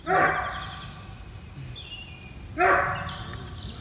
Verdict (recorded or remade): recorded